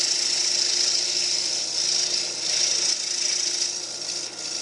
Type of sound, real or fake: real